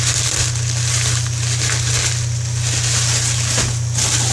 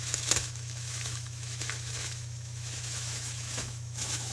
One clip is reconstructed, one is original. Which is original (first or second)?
first